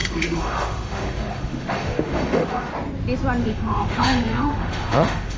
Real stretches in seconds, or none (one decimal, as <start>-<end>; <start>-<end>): 2.7-3.4